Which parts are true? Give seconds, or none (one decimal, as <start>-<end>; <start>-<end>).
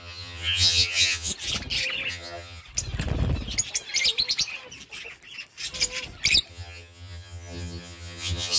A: 1.3-2.1; 2.6-6.5